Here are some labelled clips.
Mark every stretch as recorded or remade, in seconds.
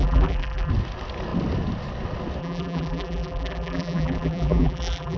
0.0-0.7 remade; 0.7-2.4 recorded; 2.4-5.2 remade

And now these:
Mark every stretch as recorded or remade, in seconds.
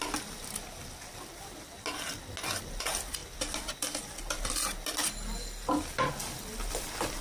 0.0-3.2 recorded; 3.2-4.1 remade; 4.1-7.2 recorded